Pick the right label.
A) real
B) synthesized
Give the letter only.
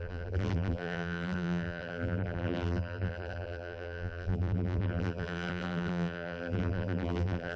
B